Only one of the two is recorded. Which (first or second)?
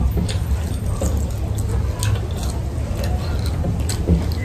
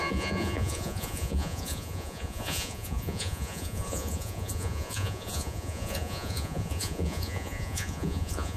first